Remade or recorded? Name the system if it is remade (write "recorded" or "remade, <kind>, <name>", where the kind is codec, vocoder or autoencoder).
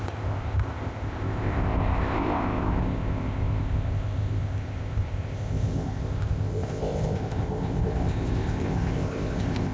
remade, codec, ZipCodec